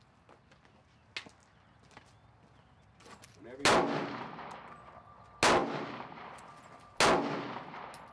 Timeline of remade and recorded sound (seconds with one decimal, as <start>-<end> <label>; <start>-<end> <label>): 0.0-8.1 recorded